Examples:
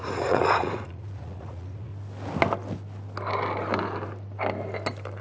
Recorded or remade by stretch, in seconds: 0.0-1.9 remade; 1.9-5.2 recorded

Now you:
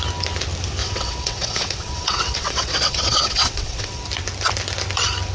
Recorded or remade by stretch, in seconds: 0.0-0.8 recorded; 0.8-4.0 remade; 4.0-5.3 recorded

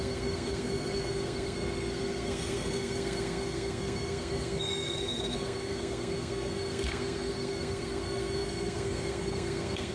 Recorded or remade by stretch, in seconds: 0.0-9.9 remade

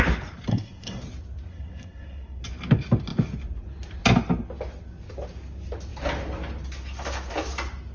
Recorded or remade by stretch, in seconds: 0.0-0.5 recorded; 0.5-1.0 remade; 1.0-1.5 recorded; 1.5-2.4 remade; 2.4-7.9 recorded

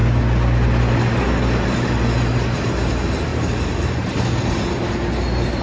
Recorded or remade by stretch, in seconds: 0.0-3.3 recorded; 3.3-4.2 remade; 4.2-5.6 recorded

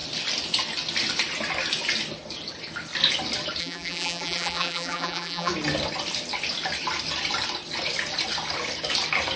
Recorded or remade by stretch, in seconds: 0.0-3.6 recorded; 3.6-5.5 remade; 5.5-9.4 recorded